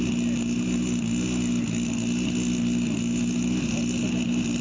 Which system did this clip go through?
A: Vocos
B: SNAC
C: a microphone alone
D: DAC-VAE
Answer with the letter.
C